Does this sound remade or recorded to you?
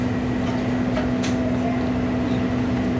recorded